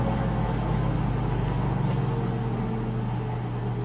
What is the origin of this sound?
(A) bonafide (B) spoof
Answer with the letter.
A